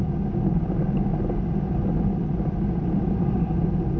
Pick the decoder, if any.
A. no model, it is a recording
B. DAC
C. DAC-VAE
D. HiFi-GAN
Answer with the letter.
A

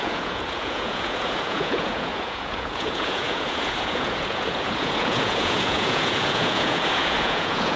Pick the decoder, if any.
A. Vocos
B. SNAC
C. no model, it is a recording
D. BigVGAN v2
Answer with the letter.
A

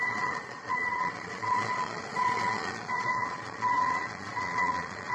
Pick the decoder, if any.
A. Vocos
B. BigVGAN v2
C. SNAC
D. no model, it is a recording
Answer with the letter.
A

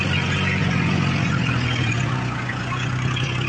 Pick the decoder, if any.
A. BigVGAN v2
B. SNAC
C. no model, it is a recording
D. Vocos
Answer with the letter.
D